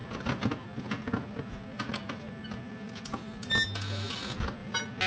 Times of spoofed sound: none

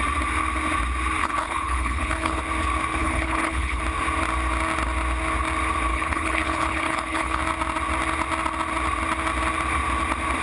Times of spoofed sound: 1.2-2.4 (codec, HILCodec); 3.0-3.8; 5.9-7.4

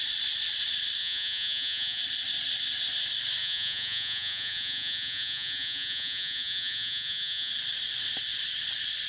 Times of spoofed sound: 1.0-2.0 (vocoder, Vocos); 3.4-7.5

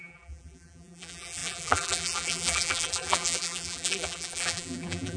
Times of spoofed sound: 0.0-5.2 (vocoder, BigVGAN v2)

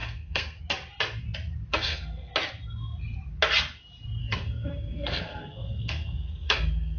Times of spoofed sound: 0.0-0.6 (codec, SNAC); 1.7-2.3; 4.2-7.0

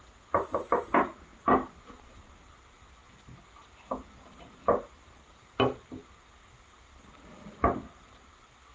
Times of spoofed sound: none

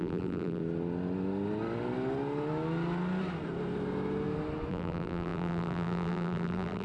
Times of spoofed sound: 0.0-0.6 (vocoder, BigVGAN v2); 4.7-6.8

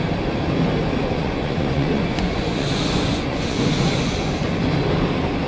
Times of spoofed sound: 1.0-4.3 (vocoder, Vocos)